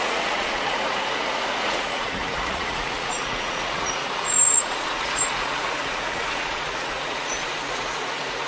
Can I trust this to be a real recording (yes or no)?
no